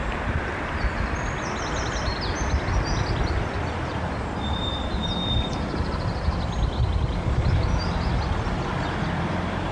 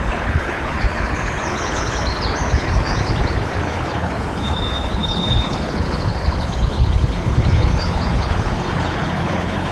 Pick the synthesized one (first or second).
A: second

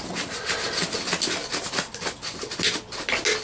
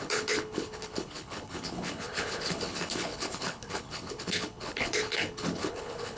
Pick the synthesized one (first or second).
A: second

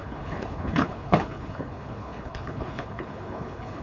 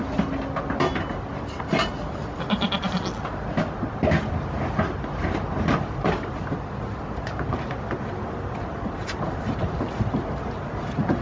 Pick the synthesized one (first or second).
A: first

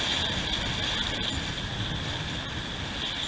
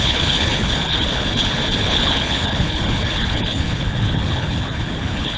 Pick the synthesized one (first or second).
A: second